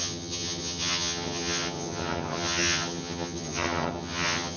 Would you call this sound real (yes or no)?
no